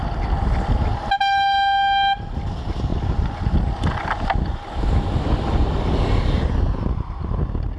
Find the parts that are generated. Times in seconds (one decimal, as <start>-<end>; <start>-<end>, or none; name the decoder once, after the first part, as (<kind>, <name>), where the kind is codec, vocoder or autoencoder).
none